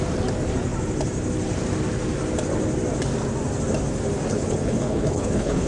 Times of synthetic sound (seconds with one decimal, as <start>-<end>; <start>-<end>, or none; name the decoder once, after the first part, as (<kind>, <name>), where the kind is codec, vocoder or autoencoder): 4.3-5.7 (codec, HILCodec)